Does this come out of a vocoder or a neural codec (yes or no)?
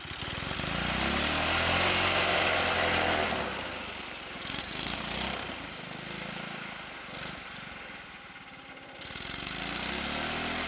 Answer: no